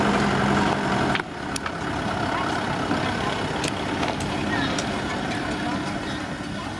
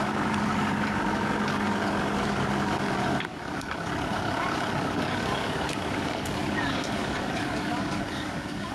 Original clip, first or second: first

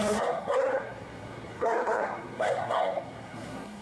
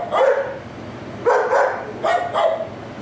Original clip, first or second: second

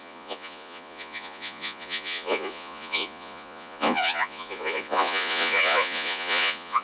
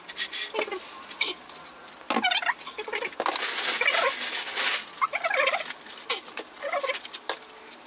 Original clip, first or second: second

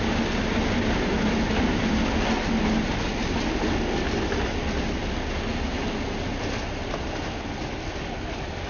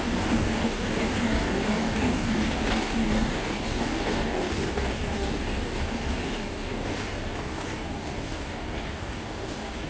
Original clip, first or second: first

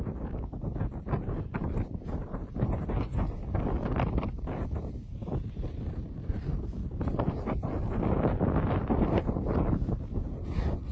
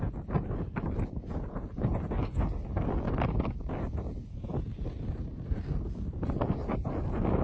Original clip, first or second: second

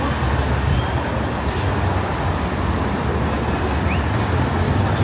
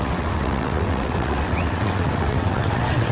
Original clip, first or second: first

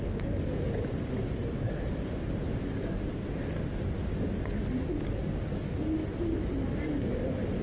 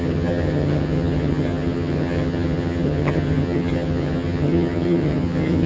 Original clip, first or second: first